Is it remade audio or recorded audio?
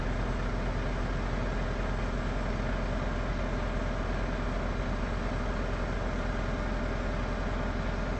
recorded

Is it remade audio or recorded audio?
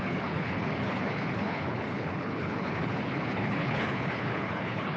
remade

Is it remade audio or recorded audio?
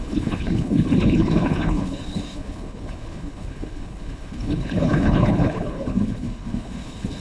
remade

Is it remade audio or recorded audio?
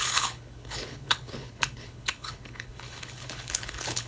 remade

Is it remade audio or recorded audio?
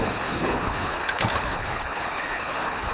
remade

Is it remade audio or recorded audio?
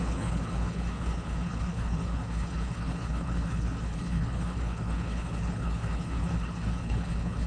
remade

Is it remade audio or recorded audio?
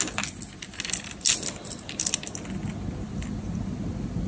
recorded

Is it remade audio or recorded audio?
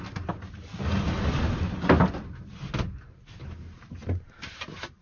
recorded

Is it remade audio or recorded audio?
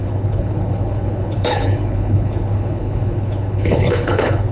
remade